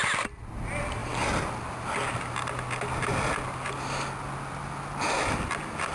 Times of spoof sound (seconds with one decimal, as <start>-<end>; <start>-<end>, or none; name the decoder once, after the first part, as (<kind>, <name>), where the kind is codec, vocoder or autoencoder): none